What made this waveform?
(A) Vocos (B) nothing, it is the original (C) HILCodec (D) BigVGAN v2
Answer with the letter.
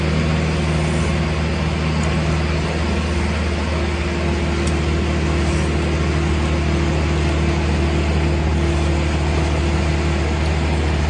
B